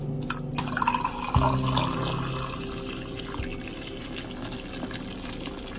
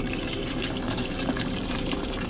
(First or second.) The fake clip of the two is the second